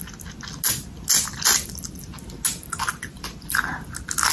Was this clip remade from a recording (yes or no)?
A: no